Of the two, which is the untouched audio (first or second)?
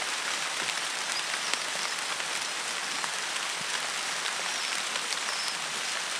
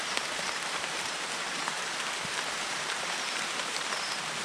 first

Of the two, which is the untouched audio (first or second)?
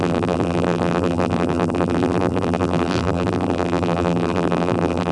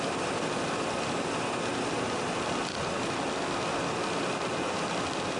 second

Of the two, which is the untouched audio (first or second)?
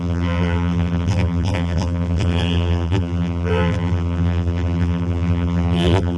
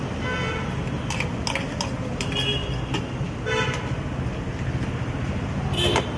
second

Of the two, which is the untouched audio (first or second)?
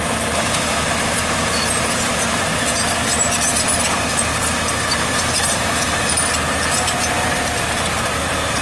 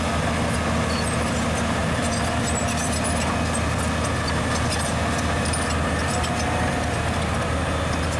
second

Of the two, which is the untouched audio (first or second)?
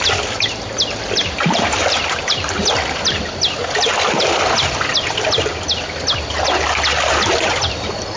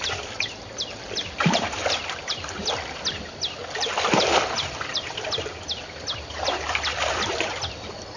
first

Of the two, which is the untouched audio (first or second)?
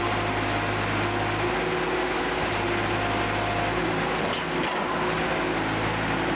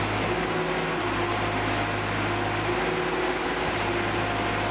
first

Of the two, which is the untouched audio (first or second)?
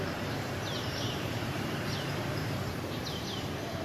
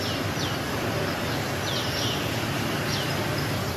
second